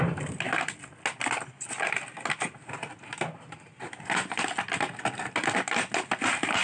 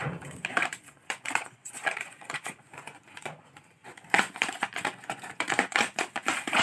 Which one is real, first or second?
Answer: first